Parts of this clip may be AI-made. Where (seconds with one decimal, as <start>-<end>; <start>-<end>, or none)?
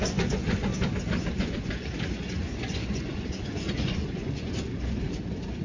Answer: 0.0-0.7; 1.3-4.7